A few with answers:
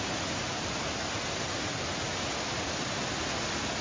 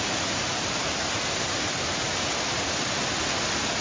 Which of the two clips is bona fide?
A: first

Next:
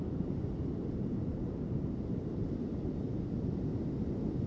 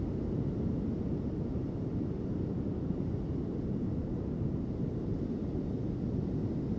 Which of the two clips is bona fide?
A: second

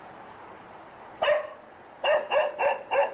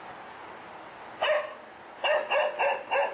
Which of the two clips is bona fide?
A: second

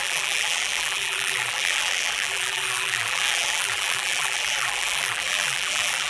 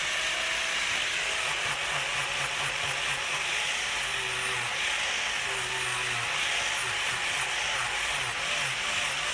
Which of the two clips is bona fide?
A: second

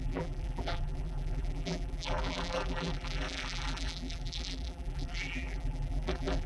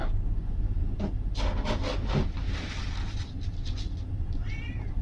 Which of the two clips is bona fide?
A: second